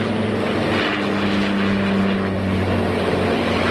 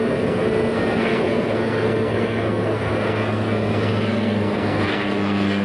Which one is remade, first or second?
second